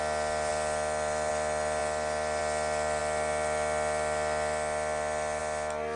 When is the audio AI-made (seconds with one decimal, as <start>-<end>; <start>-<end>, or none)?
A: 0.5-1.3